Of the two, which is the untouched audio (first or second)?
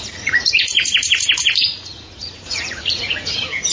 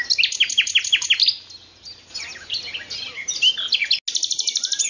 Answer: second